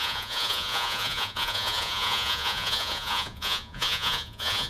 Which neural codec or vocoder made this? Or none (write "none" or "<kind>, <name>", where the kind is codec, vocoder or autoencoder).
vocoder, Vocos